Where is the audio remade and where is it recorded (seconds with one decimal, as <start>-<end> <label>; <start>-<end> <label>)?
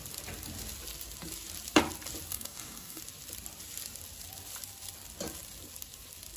0.0-2.3 recorded; 2.3-3.0 remade; 3.0-6.4 recorded